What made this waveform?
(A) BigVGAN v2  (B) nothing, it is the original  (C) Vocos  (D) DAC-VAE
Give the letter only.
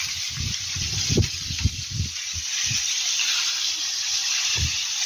B